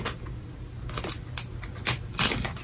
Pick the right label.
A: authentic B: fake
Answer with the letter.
A